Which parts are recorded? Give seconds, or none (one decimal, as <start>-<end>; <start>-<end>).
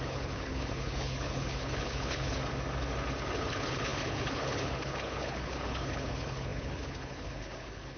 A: 2.4-3.1